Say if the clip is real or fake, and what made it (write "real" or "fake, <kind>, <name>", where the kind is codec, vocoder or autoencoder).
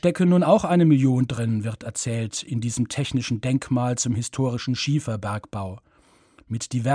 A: real